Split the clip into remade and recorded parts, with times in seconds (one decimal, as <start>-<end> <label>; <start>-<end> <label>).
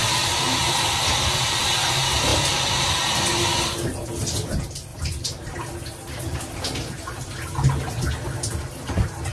0.0-2.3 recorded; 2.3-2.9 remade; 2.9-4.9 recorded; 4.9-5.6 remade; 5.6-9.3 recorded